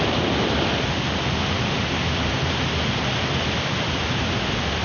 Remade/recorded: recorded